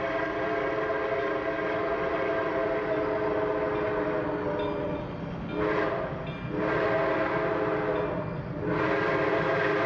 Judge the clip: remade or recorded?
recorded